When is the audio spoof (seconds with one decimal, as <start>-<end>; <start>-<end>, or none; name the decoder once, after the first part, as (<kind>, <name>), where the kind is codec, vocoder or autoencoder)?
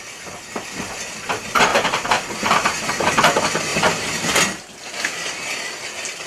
1.7-2.7 (vocoder, BigVGAN v2); 3.7-4.7